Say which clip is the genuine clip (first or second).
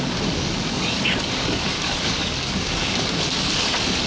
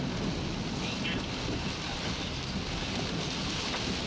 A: second